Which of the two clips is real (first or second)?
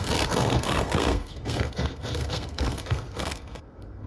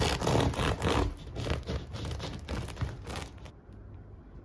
second